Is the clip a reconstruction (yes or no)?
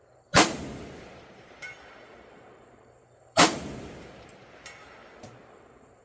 yes